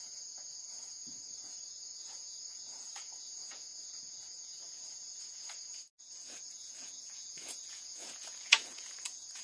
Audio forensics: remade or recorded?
remade